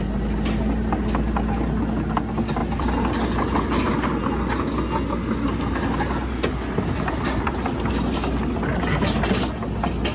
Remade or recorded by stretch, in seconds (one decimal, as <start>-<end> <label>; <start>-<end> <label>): 0.0-10.1 recorded